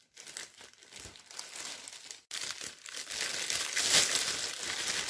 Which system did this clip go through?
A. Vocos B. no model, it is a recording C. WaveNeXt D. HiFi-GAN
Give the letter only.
B